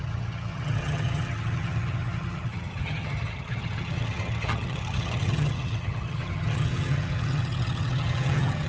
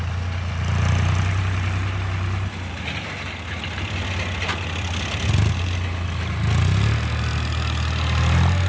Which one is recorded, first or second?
second